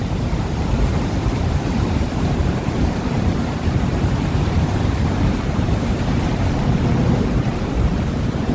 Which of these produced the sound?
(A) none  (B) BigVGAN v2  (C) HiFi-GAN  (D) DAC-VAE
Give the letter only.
B